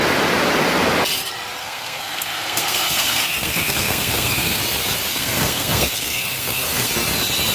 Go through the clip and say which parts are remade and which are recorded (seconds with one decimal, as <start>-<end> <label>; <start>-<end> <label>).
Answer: 0.0-1.6 recorded; 1.6-4.6 remade; 4.6-5.1 recorded; 5.1-6.9 remade; 6.9-7.5 recorded